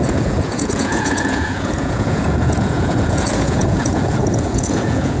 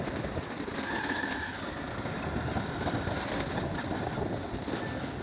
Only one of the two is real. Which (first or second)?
second